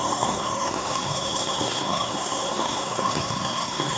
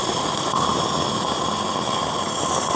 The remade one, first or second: first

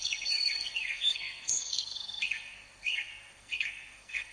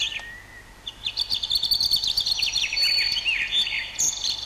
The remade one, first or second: first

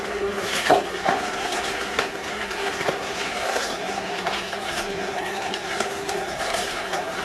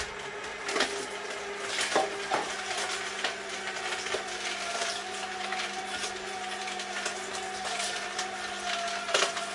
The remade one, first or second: first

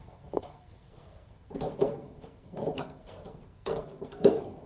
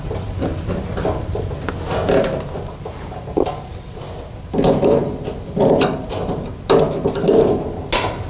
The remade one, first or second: first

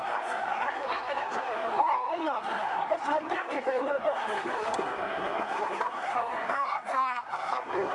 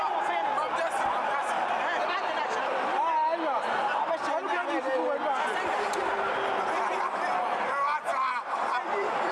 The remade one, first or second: first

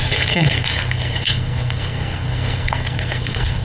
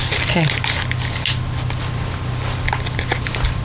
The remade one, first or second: first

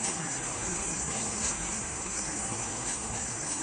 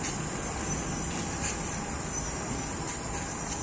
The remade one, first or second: first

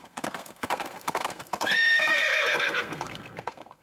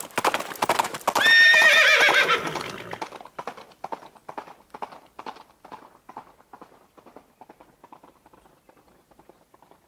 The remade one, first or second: first